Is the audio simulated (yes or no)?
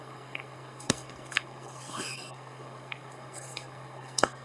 yes